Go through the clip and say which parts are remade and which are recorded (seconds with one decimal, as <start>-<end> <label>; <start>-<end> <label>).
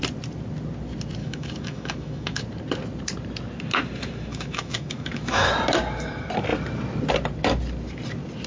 0.0-1.2 recorded; 1.2-2.4 remade; 2.4-4.3 recorded; 4.3-5.5 remade; 5.5-8.5 recorded